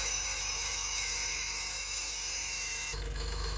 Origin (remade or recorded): remade